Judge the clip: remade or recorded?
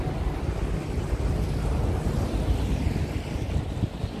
recorded